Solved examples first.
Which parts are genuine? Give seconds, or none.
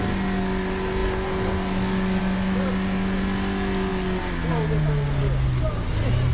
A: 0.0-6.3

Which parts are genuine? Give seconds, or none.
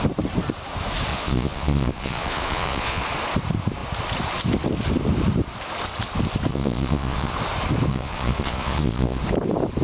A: 0.0-1.1; 3.0-6.5; 7.3-7.9; 9.2-9.8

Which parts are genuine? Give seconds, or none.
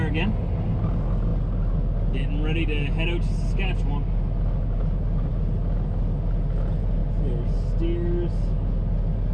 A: 0.0-9.3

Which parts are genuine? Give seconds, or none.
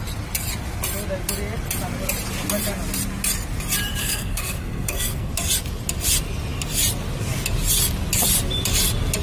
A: 0.0-4.0; 5.3-9.2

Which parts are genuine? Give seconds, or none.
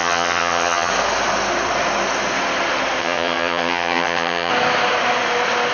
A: 0.9-3.0; 4.5-5.7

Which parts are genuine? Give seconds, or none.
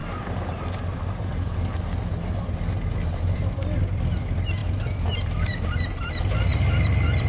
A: none